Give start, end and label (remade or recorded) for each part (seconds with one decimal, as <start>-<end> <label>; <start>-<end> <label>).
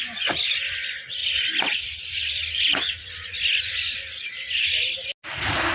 0.0-5.7 recorded